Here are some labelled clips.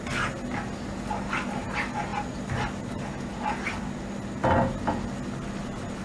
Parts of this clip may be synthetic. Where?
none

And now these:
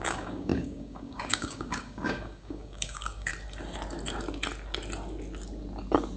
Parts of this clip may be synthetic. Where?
0.0-3.3